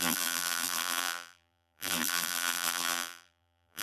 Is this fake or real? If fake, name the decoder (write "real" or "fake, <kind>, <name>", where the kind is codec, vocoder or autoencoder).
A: fake, vocoder, BigVGAN v2